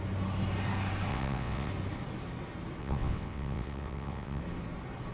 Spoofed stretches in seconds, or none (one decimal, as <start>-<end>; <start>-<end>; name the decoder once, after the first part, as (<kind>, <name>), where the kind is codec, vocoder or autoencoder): 1.1-1.7 (vocoder, WaveNeXt); 2.8-4.4